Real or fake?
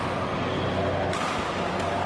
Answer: real